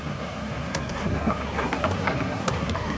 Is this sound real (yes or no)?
no